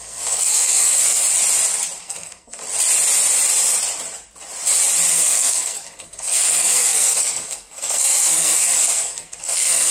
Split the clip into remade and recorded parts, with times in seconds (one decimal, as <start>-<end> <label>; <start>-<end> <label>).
0.0-1.2 remade; 1.2-2.0 recorded; 2.0-2.6 remade; 2.6-5.1 recorded; 5.1-9.9 remade